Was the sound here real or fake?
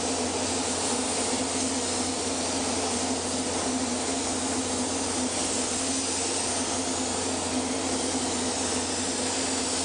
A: real